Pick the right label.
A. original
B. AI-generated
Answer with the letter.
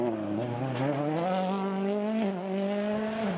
A